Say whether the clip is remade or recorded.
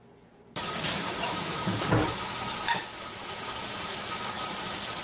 recorded